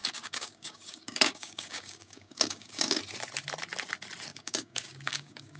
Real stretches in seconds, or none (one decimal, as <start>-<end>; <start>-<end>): 3.0-4.3